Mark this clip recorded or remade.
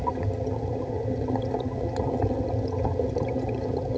remade